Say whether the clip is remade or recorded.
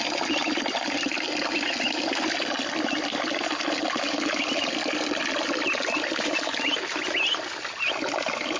recorded